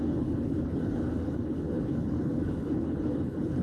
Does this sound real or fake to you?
fake